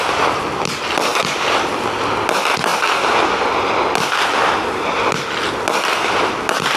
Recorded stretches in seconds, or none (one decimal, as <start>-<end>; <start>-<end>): 0.0-1.1; 1.7-6.8